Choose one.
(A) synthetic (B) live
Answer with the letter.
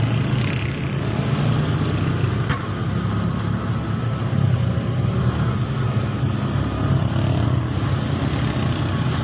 B